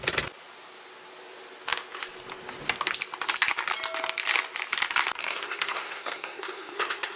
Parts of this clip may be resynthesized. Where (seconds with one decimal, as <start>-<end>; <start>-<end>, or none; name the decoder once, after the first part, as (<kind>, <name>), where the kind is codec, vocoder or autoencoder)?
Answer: 5.2-7.2 (codec, SNAC)